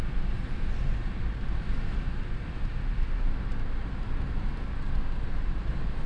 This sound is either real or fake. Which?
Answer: real